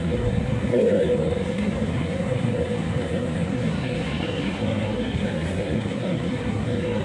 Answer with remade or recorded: remade